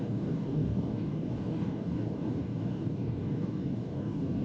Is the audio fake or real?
fake